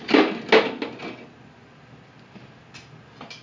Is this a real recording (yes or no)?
yes